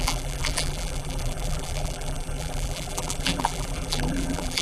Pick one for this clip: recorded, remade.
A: remade